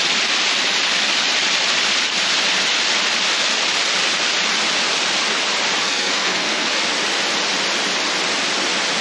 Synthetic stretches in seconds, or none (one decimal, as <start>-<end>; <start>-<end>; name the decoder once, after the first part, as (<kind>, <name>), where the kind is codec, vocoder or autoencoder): 5.8-6.8 (codec, SNAC)